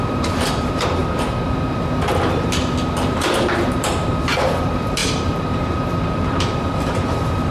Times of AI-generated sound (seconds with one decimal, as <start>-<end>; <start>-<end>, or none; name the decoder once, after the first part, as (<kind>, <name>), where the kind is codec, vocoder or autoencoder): 0.0-1.0 (vocoder, BigVGAN v2); 2.6-7.5